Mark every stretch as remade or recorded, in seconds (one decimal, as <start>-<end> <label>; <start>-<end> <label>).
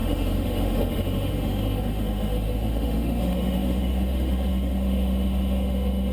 0.0-6.1 remade